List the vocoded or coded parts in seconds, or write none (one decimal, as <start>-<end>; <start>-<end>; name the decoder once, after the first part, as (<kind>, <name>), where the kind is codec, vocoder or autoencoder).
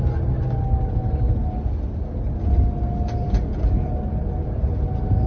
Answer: none